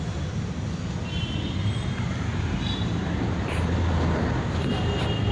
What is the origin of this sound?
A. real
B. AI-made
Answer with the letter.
A